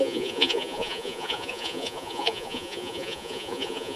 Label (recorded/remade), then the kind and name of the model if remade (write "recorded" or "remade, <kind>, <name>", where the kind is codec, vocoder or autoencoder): remade, vocoder, Vocos